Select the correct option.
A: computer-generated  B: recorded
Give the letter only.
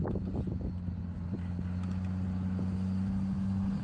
B